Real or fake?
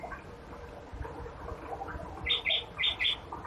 real